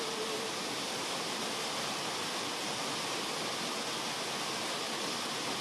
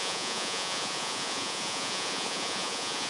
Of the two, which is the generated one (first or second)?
second